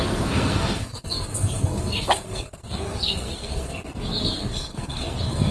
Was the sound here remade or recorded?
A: remade